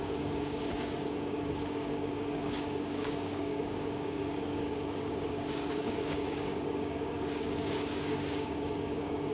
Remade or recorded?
remade